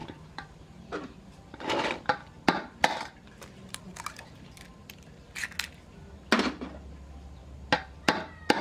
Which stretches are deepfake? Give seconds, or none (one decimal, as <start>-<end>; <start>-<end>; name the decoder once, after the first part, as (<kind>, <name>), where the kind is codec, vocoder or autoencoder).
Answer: 0.0-4.0 (vocoder, BigVGAN v2)